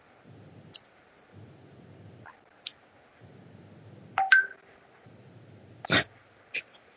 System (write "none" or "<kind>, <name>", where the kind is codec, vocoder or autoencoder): none